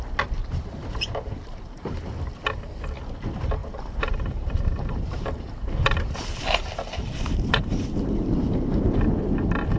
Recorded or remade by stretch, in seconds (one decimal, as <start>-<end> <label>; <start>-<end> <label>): 0.0-0.4 recorded; 0.4-2.6 remade; 2.6-3.6 recorded; 3.6-8.8 remade; 8.8-9.8 recorded